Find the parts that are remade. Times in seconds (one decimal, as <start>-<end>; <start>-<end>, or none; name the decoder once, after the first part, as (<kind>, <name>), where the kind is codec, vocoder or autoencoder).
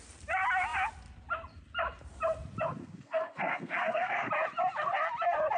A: 2.8-4.3 (codec, SNAC)